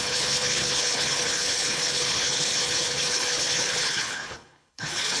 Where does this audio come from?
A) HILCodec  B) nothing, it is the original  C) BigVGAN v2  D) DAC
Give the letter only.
A